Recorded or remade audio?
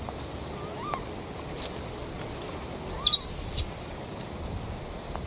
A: recorded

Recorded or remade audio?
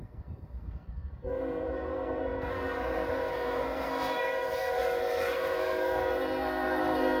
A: remade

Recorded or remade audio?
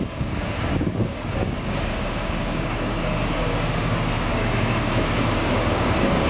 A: remade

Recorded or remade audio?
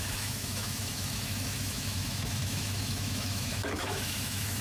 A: remade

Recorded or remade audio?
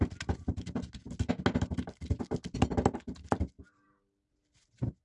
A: recorded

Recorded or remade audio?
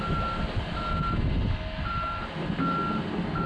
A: recorded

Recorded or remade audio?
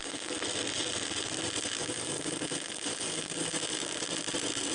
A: recorded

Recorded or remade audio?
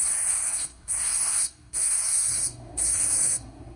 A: remade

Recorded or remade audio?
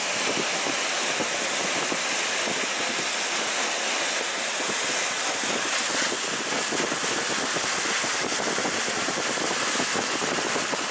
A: recorded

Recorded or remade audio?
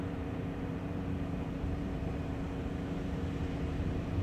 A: remade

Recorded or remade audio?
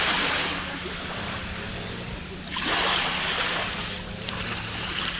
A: remade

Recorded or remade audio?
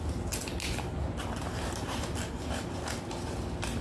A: recorded